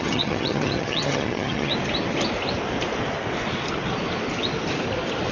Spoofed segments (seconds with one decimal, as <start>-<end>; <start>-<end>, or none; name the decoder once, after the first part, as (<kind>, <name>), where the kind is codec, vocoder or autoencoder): 0.0-1.7 (vocoder, HiFi-GAN)